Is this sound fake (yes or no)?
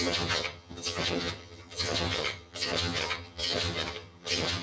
yes